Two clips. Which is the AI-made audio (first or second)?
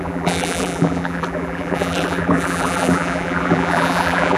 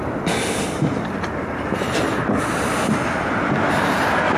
first